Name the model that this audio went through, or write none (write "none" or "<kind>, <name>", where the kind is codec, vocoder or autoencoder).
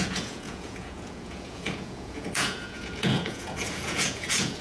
vocoder, Vocos